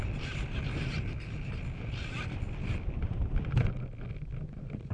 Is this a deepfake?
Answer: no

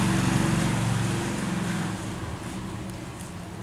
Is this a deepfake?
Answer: no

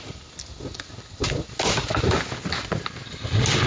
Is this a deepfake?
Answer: no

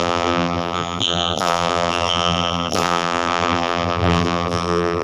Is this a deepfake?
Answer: yes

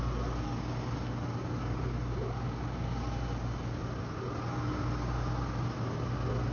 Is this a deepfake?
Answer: no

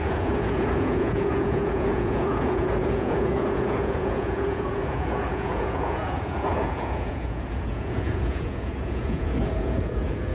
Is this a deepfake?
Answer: yes